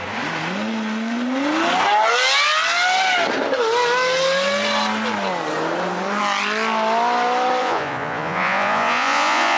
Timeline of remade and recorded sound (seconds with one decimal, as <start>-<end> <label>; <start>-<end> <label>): 0.0-7.6 recorded; 7.6-9.6 remade